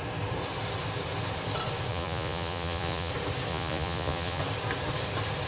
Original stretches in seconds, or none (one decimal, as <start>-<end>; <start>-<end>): 0.0-1.9; 3.1-3.5; 4.4-5.5

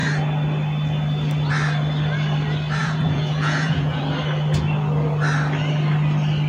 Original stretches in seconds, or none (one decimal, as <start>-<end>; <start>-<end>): 0.0-2.8; 4.0-6.5

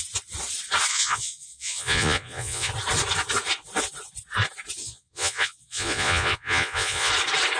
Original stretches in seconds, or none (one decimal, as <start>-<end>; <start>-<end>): 0.0-0.9; 2.7-4.8; 7.1-7.6

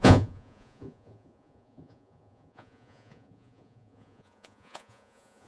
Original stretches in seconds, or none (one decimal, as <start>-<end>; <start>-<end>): none

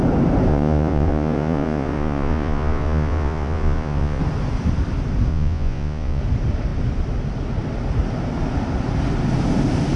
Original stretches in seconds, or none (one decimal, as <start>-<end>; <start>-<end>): 0.0-0.5; 4.2-5.3; 6.2-10.0

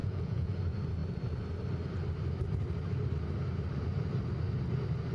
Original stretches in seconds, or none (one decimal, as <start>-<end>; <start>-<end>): 0.6-5.1

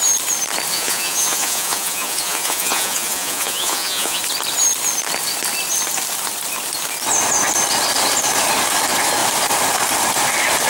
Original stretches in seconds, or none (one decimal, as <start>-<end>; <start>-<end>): 0.0-0.7; 4.2-10.7

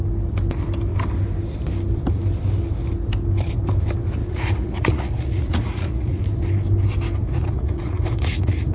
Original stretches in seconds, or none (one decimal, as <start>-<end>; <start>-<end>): 0.0-4.2; 6.2-7.2